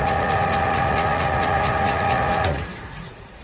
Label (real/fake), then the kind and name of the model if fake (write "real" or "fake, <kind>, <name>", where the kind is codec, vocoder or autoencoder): fake, vocoder, Vocos